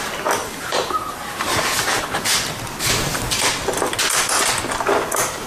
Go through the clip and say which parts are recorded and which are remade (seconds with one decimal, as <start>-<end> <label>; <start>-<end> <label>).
0.0-0.4 recorded; 0.4-2.6 remade; 2.6-5.5 recorded